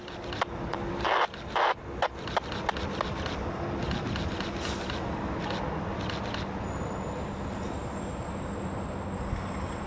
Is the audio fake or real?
real